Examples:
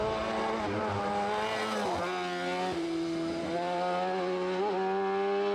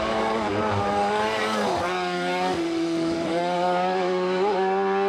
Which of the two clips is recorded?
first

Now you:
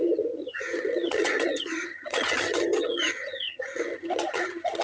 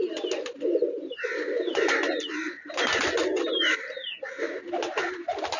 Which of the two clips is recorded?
second